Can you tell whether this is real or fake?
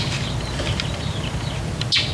real